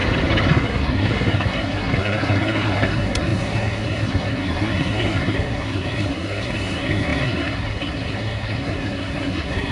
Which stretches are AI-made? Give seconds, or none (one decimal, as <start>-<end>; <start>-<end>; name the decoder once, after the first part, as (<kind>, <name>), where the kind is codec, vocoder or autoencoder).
0.5-9.7 (codec, SNAC)